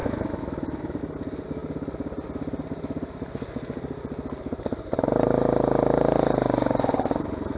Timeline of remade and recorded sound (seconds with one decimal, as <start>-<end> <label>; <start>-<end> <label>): 0.0-1.0 remade; 1.0-7.6 recorded